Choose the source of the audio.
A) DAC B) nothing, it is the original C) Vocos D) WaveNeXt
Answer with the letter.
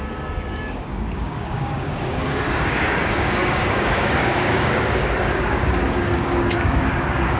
A